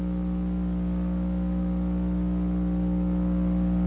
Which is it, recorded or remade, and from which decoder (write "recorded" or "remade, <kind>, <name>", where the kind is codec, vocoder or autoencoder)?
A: recorded